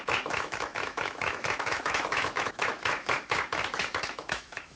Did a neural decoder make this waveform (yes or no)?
yes